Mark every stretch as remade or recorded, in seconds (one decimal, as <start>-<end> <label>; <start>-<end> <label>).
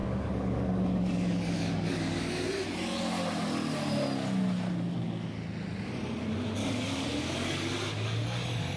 0.0-2.5 remade; 2.5-6.6 recorded; 6.6-8.8 remade